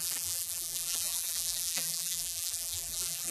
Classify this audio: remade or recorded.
remade